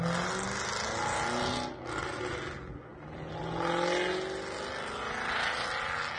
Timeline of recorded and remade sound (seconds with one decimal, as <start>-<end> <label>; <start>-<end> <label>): 0.0-6.2 recorded